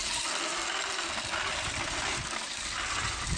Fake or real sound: real